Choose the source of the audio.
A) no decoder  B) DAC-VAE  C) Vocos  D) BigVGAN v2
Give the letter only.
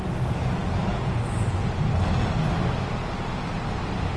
A